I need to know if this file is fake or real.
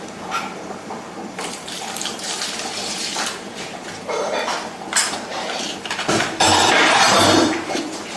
fake